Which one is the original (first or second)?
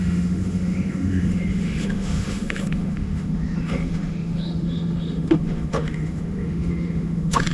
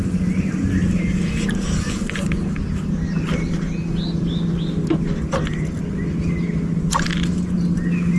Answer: second